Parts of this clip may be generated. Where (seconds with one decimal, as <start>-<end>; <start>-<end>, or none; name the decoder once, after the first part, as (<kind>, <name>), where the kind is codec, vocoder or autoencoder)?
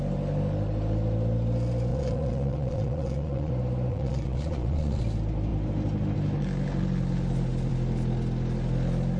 1.9-3.5 (vocoder, Vocos); 3.9-5.0